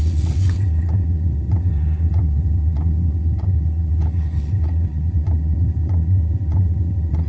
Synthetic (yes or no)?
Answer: yes